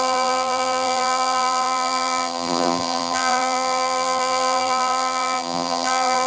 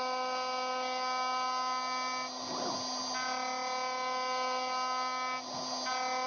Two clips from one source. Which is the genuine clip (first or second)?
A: second